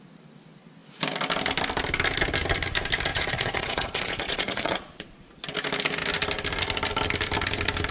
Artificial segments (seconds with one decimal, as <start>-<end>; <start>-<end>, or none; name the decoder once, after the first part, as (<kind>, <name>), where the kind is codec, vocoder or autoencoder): 3.1-5.3 (vocoder, Vocos)